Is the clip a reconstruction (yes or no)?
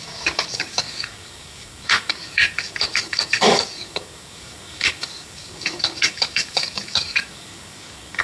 yes